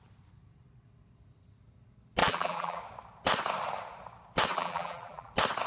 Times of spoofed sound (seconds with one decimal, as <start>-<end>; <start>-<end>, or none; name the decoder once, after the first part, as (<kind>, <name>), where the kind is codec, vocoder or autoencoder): 2.2-2.8 (vocoder, BigVGAN v2); 4.5-5.3